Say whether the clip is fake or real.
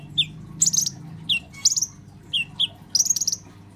real